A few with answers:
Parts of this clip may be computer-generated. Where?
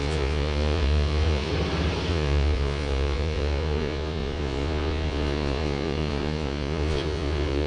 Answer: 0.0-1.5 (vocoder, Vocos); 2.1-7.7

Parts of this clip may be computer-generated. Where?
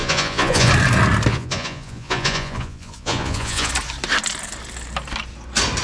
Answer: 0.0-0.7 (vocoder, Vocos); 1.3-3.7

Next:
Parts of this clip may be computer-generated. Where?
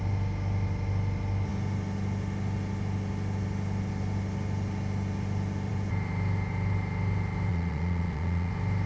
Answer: 7.5-8.5 (vocoder, Vocos)